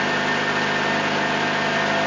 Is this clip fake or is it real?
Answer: real